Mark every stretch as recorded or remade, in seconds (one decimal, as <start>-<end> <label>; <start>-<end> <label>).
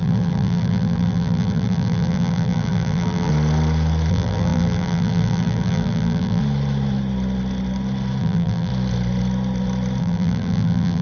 0.0-3.3 remade; 3.3-4.1 recorded; 4.1-6.4 remade; 6.4-8.2 recorded; 8.2-8.7 remade; 8.7-10.0 recorded; 10.0-11.0 remade